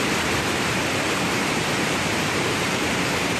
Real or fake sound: fake